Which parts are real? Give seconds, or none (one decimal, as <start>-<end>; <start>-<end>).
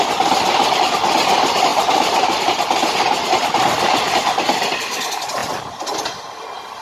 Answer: 0.0-1.7; 2.4-2.8; 3.4-6.8